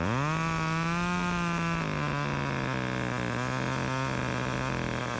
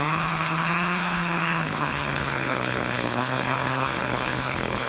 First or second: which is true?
first